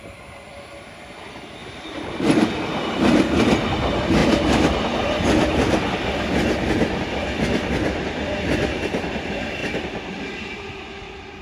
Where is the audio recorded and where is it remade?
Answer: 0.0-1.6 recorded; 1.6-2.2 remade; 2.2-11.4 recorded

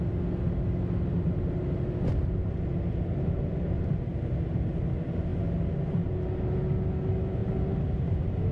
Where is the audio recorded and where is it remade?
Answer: 0.0-8.5 recorded

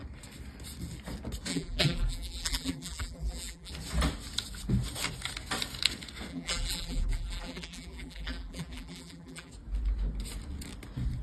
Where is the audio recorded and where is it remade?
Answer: 0.0-1.5 recorded; 1.5-3.7 remade; 3.7-6.3 recorded; 6.3-9.5 remade; 9.5-11.2 recorded

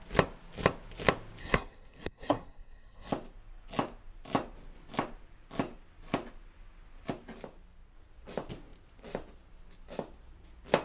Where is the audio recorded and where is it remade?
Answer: 0.0-1.4 recorded; 1.4-3.1 remade; 3.1-10.8 recorded

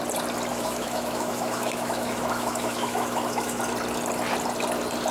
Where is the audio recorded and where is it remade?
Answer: 0.0-0.5 recorded; 0.5-3.6 remade; 3.6-5.1 recorded

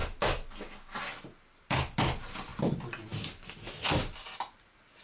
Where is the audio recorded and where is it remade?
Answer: 0.0-5.0 recorded

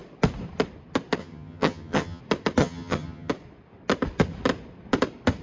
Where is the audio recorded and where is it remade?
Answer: 0.0-1.2 recorded; 1.2-2.2 remade; 2.2-2.6 recorded; 2.6-3.3 remade; 3.3-5.4 recorded

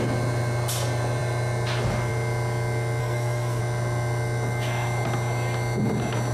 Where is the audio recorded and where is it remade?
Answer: 0.0-3.0 recorded; 3.0-3.6 remade; 3.6-6.3 recorded